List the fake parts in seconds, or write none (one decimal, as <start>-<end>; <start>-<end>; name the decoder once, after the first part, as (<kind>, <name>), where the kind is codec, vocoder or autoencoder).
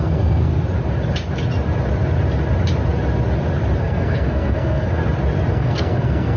0.0-0.5 (codec, SNAC); 3.8-5.0; 5.5-6.4